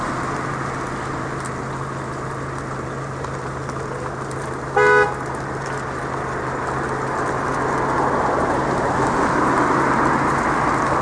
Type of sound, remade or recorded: recorded